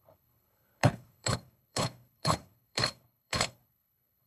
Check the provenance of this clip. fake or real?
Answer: fake